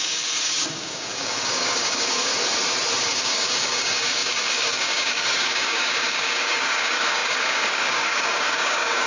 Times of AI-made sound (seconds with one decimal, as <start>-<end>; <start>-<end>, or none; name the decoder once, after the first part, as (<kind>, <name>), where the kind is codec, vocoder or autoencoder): 0.0-2.3 (codec, DAC); 3.1-9.1

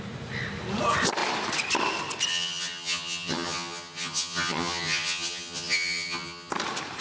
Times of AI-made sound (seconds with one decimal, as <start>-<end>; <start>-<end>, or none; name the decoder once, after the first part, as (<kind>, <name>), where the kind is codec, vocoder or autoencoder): 2.3-6.5 (vocoder, HiFi-GAN)

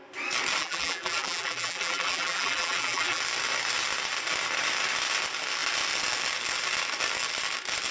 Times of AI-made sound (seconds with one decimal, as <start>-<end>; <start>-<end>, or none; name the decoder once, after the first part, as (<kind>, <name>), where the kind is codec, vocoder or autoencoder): 0.6-3.2 (vocoder, BigVGAN v2)